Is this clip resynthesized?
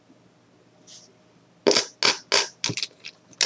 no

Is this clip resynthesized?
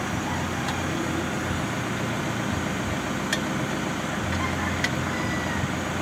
no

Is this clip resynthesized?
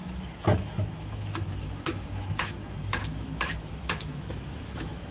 yes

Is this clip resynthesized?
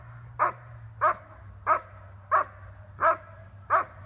no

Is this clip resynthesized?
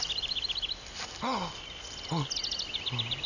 no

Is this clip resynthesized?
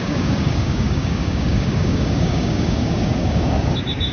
yes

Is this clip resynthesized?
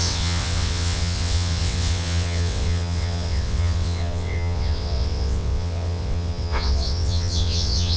yes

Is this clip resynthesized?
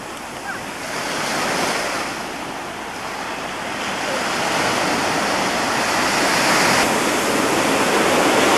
no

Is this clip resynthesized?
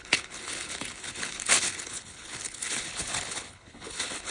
yes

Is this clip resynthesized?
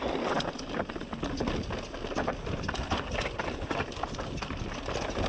no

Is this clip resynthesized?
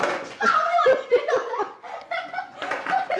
yes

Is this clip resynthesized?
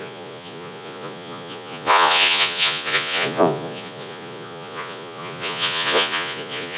yes